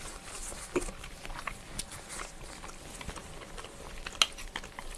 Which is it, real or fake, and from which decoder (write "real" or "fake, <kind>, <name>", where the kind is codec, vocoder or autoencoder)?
real